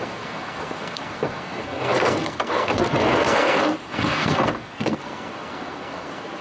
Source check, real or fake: fake